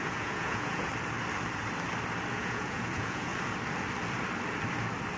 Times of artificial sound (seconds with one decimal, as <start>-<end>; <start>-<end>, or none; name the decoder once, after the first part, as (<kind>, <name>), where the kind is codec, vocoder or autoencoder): 0.0-0.9 (vocoder, Vocos); 2.3-3.3

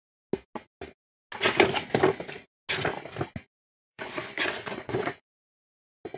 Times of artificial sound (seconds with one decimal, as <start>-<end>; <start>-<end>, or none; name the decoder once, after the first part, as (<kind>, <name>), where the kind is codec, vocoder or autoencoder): 3.8-5.6 (vocoder, Vocos)

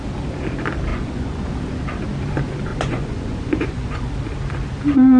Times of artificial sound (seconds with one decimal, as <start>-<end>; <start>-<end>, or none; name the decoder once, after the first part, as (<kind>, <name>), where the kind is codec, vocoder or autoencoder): 0.9-1.5 (vocoder, Vocos); 2.7-4.1